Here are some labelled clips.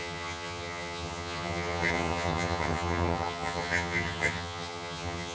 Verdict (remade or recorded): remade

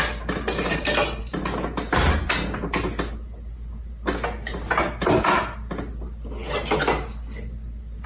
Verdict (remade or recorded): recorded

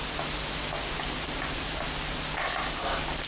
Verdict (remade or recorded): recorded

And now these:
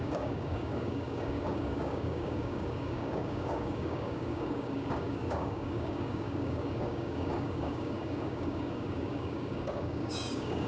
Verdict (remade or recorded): remade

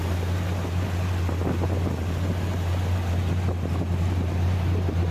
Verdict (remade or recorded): recorded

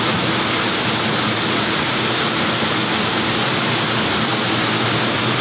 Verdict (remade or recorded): remade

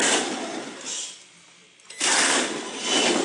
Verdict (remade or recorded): recorded